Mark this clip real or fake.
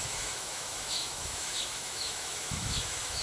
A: fake